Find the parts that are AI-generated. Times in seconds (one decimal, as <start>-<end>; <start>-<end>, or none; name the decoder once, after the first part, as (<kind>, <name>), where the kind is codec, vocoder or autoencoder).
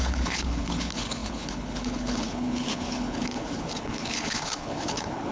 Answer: 0.0-5.3 (codec, HILCodec)